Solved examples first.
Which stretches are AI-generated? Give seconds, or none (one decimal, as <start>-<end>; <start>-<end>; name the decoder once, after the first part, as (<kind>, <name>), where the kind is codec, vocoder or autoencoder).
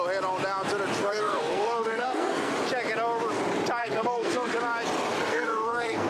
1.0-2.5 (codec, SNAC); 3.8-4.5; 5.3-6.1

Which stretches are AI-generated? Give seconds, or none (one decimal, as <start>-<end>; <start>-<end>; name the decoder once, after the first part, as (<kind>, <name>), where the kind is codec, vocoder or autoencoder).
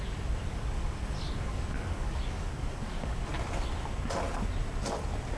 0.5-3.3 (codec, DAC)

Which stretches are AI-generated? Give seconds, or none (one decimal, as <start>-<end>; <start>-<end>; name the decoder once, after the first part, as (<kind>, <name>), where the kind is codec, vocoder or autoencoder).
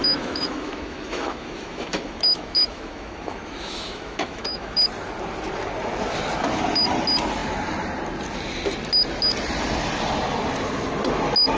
0.0-4.8 (autoencoder, DAC-VAE)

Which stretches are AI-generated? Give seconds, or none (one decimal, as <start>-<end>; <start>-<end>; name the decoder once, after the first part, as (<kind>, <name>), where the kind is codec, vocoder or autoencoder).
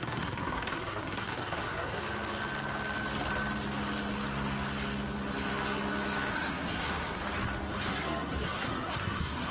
0.0-2.0 (codec, SNAC); 6.3-7.2; 7.9-9.5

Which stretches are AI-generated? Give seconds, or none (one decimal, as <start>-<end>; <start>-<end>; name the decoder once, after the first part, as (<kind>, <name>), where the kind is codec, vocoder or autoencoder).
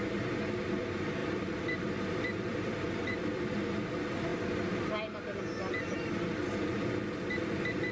1.2-3.6 (vocoder, BigVGAN v2)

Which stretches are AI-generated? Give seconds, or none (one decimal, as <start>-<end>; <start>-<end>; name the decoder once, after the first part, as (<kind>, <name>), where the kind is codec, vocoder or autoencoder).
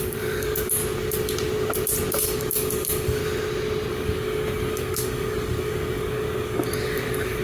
0.0-0.8 (codec, DAC); 2.2-3.2; 3.9-7.4